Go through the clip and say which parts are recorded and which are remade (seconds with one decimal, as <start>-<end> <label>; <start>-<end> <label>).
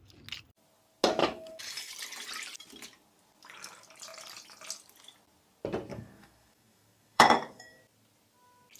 0.0-1.2 recorded; 1.2-1.9 remade; 1.9-5.9 recorded; 5.9-7.8 remade; 7.8-8.8 recorded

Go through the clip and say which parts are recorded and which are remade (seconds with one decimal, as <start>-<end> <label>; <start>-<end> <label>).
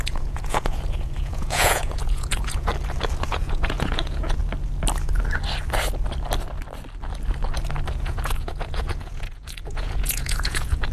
0.0-2.7 remade; 2.7-3.3 recorded; 3.3-4.4 remade; 4.4-7.9 recorded; 7.9-10.9 remade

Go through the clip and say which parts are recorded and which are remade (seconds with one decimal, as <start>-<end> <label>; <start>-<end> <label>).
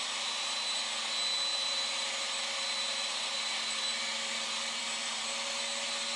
0.0-1.5 recorded; 1.5-5.2 remade; 5.2-6.2 recorded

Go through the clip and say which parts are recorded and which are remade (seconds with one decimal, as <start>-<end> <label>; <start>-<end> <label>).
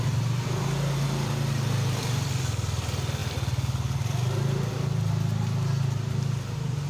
0.0-6.9 recorded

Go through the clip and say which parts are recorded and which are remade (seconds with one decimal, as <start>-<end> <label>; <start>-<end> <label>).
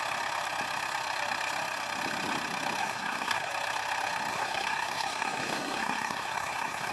0.0-2.8 recorded; 2.8-3.5 remade; 3.5-4.3 recorded; 4.3-6.9 remade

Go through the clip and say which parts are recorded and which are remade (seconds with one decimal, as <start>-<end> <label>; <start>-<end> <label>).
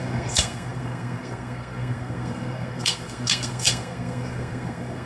0.0-5.1 remade